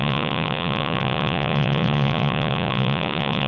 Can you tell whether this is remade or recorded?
remade